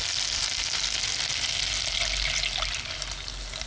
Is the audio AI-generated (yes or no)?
no